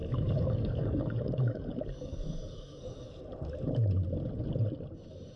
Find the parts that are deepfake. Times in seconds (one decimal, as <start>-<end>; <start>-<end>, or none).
0.0-3.2